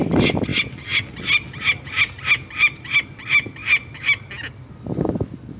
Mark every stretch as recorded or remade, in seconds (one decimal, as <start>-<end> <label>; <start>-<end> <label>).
0.0-5.6 recorded